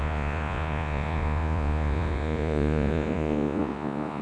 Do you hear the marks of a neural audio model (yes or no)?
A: yes